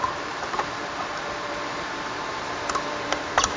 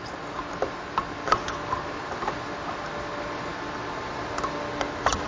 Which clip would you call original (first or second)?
second